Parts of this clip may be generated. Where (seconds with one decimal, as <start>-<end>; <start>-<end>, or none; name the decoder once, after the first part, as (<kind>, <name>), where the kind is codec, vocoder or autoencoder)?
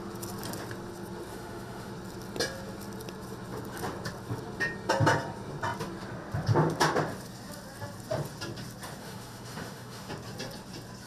1.3-1.9 (autoencoder, DAC-VAE); 9.0-10.1